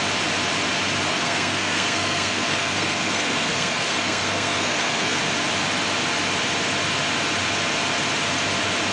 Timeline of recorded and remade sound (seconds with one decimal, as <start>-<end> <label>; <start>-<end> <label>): 0.0-1.1 recorded; 1.1-5.2 remade; 5.2-8.9 recorded